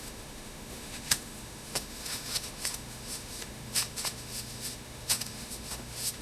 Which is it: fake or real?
fake